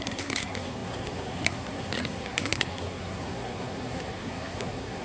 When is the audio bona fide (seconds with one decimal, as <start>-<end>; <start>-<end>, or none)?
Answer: none